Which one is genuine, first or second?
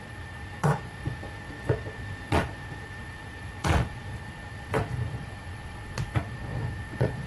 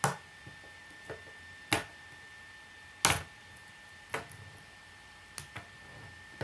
second